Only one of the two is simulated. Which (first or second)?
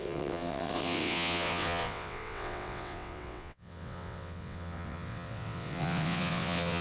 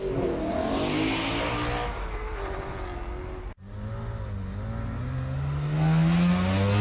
first